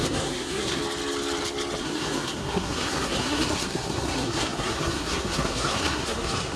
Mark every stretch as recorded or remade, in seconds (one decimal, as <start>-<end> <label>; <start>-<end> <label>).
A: 0.0-0.8 remade; 0.8-1.8 recorded; 1.8-6.6 remade